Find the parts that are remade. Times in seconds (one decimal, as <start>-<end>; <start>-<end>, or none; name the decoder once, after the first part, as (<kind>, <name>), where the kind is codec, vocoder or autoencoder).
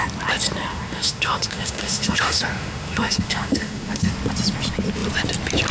0.7-4.1 (autoencoder, DAC-VAE)